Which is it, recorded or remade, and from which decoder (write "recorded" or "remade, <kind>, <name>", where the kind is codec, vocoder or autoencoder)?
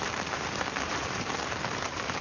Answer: remade, vocoder, BigVGAN v2